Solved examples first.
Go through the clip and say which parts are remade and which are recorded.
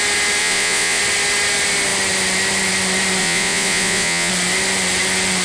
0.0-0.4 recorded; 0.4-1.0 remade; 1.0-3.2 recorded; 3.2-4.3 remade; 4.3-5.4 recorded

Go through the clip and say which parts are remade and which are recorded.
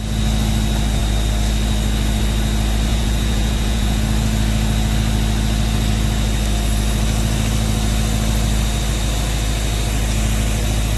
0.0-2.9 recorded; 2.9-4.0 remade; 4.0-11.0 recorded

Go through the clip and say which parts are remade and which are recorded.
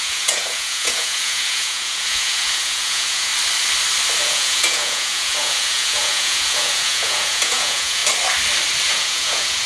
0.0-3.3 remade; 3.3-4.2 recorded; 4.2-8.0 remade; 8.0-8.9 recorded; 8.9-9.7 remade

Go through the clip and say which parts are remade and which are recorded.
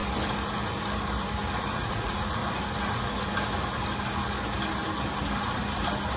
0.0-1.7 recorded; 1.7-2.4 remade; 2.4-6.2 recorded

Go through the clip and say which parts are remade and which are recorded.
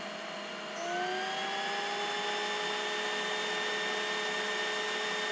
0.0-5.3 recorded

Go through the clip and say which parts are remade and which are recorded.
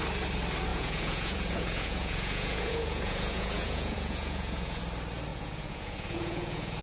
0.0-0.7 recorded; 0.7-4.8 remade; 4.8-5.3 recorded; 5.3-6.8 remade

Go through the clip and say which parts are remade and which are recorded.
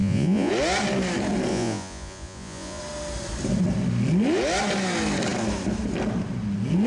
0.0-0.5 remade; 0.5-1.5 recorded; 1.5-2.8 remade; 2.8-6.9 recorded